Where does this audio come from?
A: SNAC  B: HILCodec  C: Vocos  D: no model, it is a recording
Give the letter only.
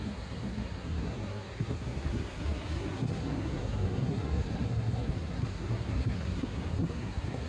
A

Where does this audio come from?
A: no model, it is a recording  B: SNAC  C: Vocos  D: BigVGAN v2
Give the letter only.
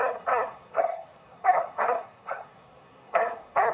B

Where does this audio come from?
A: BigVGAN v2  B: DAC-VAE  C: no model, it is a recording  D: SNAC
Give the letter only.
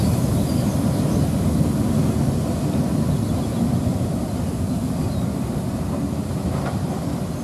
C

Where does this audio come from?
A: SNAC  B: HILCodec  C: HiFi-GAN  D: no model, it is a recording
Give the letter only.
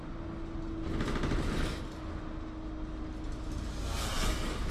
D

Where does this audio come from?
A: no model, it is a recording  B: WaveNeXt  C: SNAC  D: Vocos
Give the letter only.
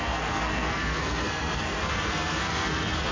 C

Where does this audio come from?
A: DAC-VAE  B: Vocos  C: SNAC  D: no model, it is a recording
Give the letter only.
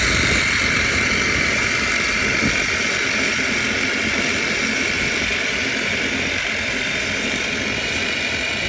D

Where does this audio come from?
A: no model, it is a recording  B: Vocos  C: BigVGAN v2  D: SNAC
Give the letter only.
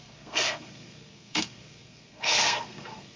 D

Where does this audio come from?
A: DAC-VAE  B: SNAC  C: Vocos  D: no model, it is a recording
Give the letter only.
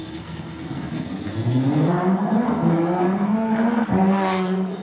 B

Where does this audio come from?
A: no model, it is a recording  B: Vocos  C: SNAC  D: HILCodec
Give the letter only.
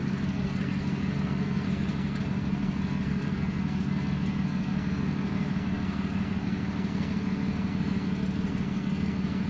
C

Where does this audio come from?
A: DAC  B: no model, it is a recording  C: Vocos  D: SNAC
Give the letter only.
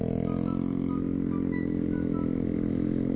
B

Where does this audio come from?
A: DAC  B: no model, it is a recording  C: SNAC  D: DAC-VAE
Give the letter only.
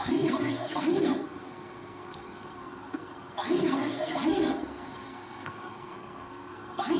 C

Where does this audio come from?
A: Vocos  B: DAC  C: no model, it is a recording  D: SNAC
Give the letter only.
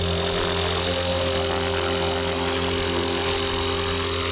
C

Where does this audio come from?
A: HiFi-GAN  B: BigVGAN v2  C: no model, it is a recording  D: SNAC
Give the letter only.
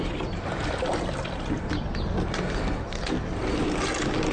C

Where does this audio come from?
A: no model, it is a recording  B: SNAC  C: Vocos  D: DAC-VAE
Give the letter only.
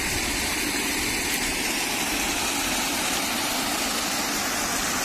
A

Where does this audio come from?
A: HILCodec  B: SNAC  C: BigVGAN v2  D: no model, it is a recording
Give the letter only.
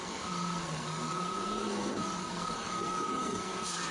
B